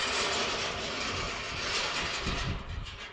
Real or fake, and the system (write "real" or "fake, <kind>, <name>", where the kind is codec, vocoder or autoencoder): real